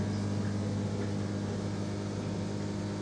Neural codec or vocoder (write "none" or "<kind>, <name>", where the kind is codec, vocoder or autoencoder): none